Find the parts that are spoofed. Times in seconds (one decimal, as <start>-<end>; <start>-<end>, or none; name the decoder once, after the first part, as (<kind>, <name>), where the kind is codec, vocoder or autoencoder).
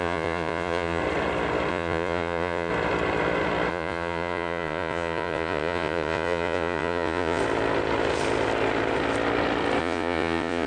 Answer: 0.0-1.0 (vocoder, Vocos); 1.7-2.7; 3.7-7.4; 9.8-10.7